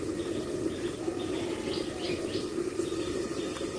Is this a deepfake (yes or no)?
no